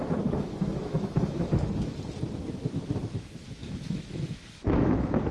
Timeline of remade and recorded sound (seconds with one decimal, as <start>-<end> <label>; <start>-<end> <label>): 0.0-1.5 remade; 1.5-3.1 recorded; 3.1-5.3 remade